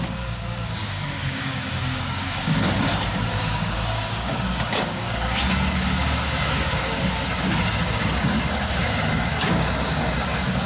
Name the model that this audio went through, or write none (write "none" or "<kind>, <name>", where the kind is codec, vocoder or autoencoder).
codec, DAC